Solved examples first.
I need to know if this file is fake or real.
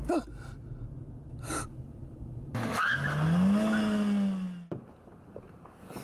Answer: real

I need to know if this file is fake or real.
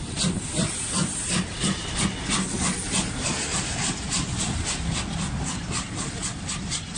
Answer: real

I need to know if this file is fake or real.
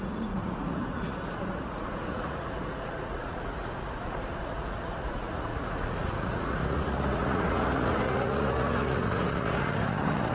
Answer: fake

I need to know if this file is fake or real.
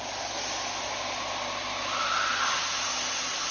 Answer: real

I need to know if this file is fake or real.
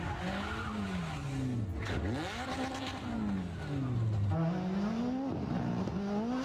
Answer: real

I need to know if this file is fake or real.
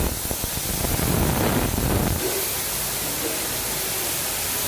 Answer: real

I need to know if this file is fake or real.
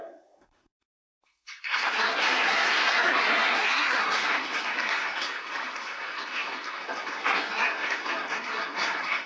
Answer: fake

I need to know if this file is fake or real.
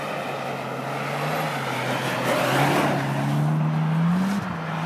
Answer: real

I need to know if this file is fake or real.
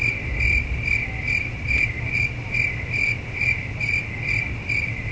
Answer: real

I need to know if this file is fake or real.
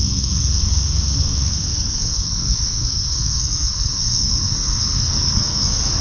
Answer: fake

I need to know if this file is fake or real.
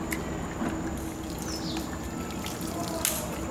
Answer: real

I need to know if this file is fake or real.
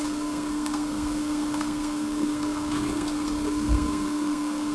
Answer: fake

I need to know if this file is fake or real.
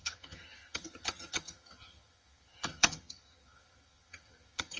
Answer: fake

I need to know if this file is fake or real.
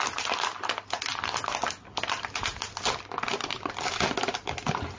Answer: real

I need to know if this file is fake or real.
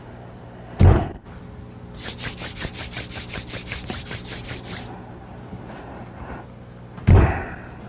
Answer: real